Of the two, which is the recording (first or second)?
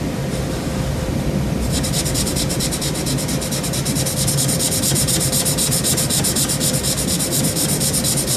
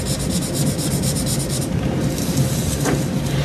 second